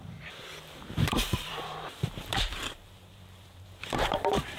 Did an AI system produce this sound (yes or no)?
yes